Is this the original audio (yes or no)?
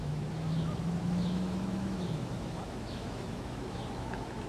no